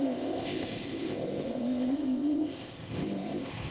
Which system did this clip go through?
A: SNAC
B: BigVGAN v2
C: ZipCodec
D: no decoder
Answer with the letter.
C